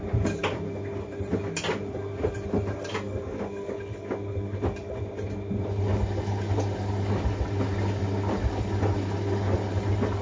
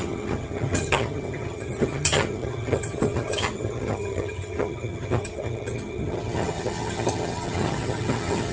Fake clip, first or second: second